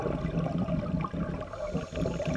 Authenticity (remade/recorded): recorded